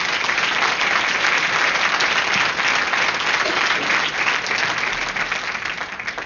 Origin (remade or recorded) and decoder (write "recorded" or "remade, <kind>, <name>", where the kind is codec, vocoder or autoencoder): recorded